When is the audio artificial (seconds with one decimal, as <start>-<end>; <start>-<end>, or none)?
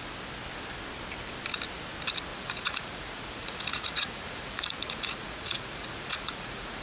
2.3-6.8